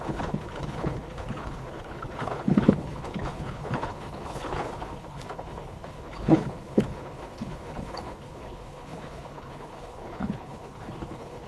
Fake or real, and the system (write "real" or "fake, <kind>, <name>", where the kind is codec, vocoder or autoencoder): fake, codec, HILCodec